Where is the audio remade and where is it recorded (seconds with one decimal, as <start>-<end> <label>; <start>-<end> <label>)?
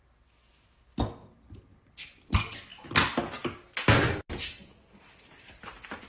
0.0-6.1 recorded